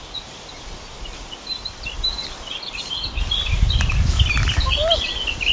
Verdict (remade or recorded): recorded